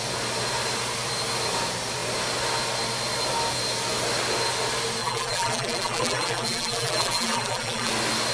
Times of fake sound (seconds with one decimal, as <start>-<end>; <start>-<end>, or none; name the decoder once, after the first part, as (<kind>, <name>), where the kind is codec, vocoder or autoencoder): 5.0-7.9 (vocoder, BigVGAN v2)